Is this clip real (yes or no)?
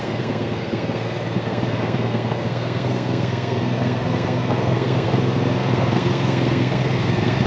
no